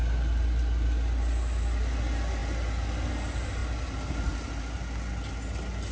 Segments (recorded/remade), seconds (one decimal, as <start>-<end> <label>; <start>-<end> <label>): 0.0-5.9 recorded